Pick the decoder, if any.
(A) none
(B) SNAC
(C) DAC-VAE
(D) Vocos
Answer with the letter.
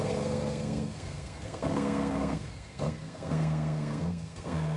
B